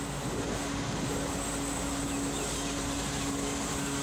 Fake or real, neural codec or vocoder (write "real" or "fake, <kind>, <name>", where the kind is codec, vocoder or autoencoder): real